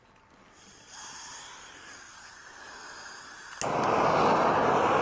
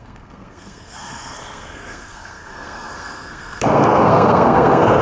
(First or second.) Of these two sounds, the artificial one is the second